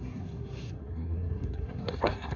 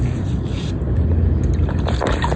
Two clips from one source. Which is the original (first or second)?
second